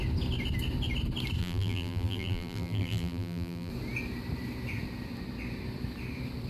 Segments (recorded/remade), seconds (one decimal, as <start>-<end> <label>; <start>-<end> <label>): 0.0-1.4 recorded; 1.4-3.7 remade; 3.7-6.5 recorded